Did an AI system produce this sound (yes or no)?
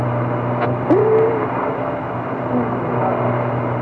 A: no